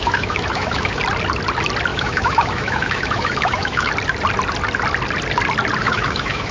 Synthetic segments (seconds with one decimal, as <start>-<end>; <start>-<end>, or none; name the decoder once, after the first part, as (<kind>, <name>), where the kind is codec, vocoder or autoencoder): 0.0-1.0 (autoencoder, DAC-VAE); 1.9-3.9; 5.8-6.5